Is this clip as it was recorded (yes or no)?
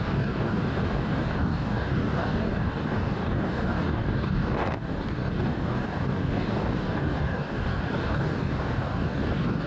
no